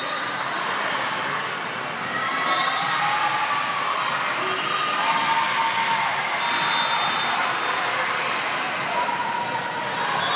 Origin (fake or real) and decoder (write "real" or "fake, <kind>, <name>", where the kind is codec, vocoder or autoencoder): real